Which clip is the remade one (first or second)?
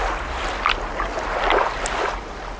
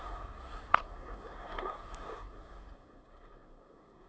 second